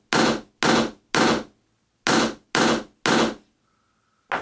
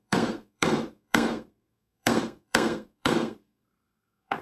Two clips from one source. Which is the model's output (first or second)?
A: second